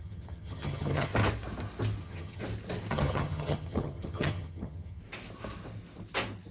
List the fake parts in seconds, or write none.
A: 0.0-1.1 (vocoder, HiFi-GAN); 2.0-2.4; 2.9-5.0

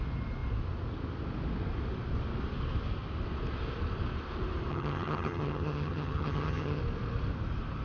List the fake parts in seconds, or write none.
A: 4.7-6.8 (vocoder, HiFi-GAN)

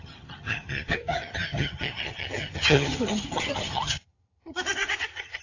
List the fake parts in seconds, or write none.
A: 0.0-5.4 (vocoder, HiFi-GAN)

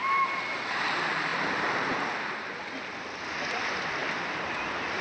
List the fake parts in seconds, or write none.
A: none

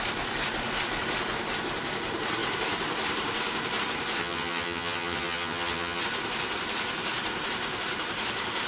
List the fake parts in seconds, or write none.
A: 4.2-6.0 (vocoder, HiFi-GAN)